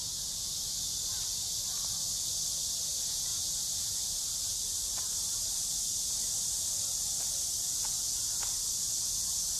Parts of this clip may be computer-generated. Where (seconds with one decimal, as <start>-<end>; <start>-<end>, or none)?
3.3-6.0